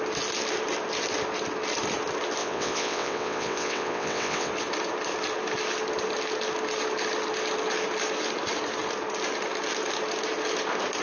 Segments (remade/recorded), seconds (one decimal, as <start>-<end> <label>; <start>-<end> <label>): 0.0-2.4 recorded; 2.4-4.5 remade; 4.5-11.0 recorded